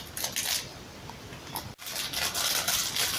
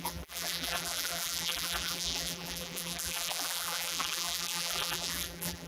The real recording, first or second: first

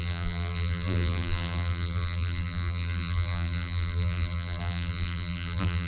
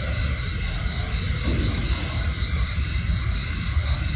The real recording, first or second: second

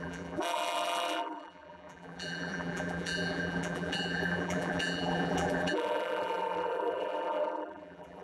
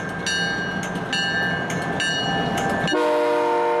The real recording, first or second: second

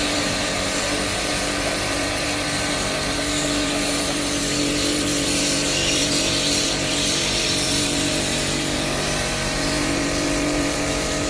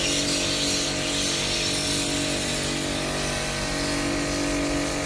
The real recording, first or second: second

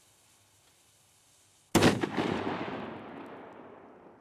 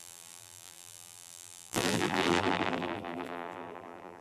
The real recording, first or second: first